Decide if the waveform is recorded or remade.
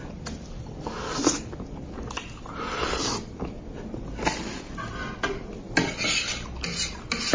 recorded